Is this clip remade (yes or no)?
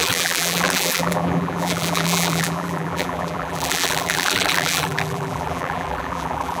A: yes